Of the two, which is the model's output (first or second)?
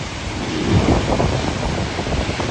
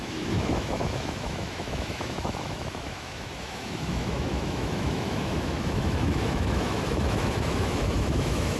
second